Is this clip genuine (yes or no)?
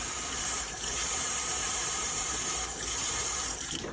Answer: no